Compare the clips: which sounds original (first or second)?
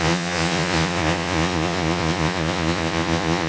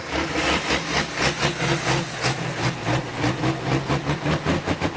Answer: second